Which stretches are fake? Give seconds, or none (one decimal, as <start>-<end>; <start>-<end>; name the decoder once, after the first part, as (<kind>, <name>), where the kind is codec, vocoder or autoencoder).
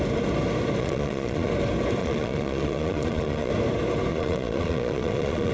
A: 0.8-1.5 (vocoder, Vocos); 2.0-3.5; 4.1-5.5